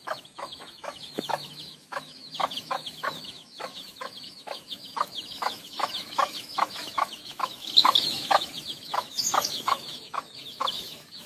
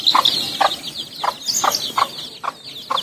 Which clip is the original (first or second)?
second